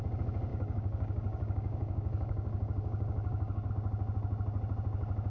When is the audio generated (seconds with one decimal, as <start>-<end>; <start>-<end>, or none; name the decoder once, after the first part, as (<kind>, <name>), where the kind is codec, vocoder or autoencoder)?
0.5-3.7 (codec, DAC)